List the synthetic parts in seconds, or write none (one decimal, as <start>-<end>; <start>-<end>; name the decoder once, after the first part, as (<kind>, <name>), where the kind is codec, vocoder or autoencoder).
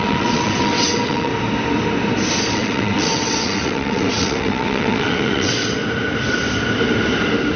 0.0-1.3 (vocoder, WaveNeXt); 2.5-5.8